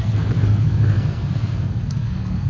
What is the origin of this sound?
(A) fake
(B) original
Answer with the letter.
A